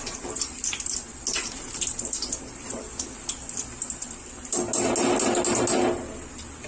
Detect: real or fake real